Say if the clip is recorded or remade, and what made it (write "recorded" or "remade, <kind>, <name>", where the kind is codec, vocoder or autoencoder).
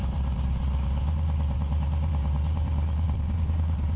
remade, vocoder, BigVGAN v2